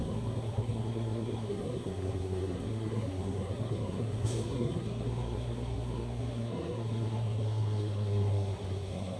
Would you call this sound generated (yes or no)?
yes